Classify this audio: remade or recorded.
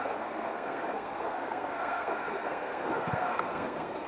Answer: remade